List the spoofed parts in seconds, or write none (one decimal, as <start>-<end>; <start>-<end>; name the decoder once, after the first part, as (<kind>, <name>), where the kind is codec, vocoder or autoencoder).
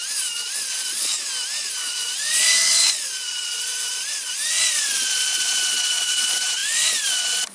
0.0-1.1 (vocoder, Vocos); 1.7-7.5